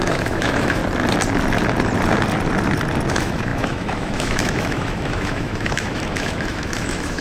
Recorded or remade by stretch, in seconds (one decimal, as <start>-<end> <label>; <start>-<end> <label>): 0.0-0.8 remade; 0.8-3.1 recorded; 3.1-7.2 remade